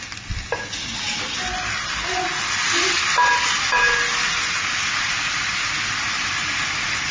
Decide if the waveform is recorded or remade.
recorded